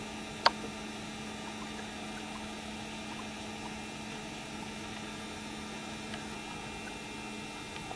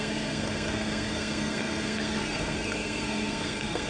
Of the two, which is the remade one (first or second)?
second